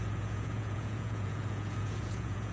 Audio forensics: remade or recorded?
remade